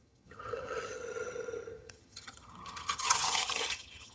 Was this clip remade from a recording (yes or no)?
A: yes